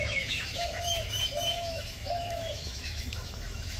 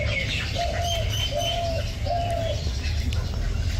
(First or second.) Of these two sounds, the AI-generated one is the first